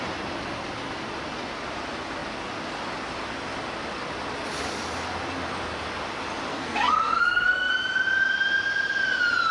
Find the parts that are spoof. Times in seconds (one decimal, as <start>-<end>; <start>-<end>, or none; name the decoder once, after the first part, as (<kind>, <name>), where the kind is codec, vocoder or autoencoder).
6.5-7.7 (codec, SNAC)